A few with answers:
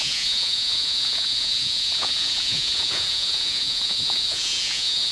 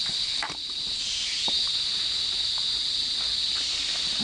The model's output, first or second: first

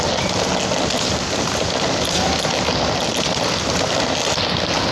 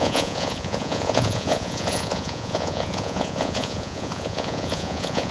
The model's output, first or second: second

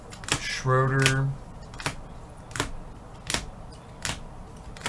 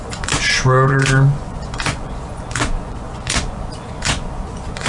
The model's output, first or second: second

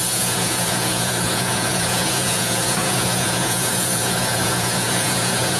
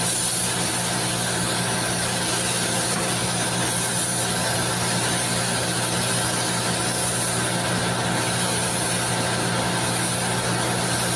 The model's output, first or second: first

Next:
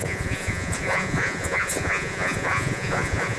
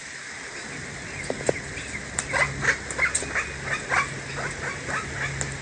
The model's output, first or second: first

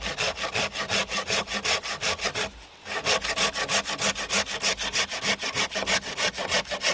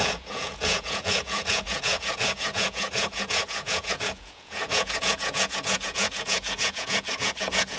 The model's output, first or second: second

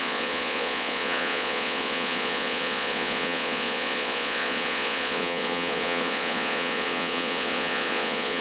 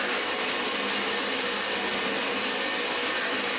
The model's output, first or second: first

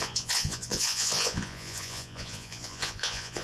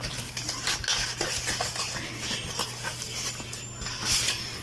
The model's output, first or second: first